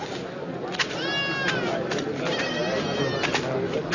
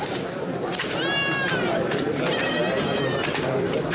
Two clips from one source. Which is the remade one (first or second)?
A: second